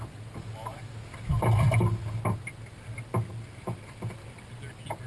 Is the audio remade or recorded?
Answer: recorded